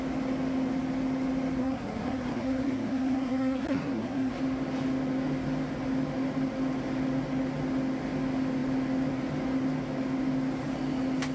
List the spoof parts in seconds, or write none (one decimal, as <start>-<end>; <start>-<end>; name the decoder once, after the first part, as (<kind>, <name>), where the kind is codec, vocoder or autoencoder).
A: 1.6-4.3 (codec, SNAC)